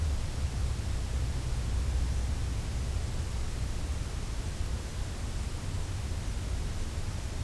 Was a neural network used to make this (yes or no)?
no